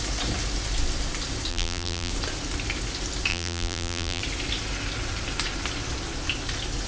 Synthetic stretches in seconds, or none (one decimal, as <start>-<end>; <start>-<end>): 1.5-2.1; 3.3-4.2